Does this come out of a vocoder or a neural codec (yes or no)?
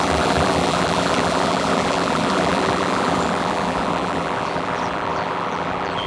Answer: yes